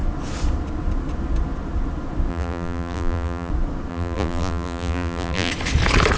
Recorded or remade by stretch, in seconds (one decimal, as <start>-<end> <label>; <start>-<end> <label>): 0.0-2.3 recorded; 2.3-3.5 remade; 3.5-3.9 recorded; 3.9-5.5 remade; 5.5-6.2 recorded